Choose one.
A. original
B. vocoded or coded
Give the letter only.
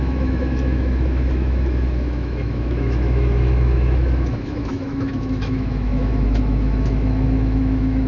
B